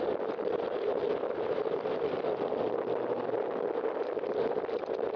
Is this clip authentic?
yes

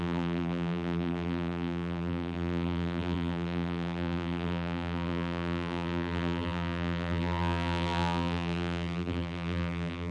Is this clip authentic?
no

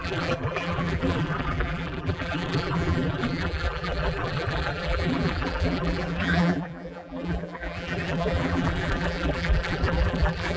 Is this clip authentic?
no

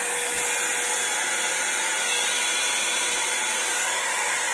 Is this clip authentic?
yes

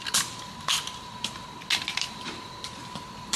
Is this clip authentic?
yes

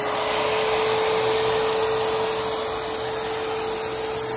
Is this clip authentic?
yes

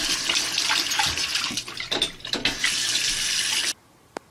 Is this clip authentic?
yes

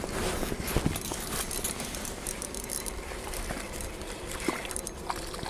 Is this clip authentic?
yes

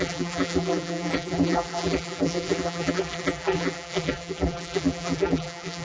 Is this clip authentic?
no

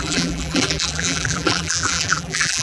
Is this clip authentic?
no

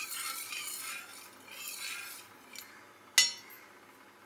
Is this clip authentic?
yes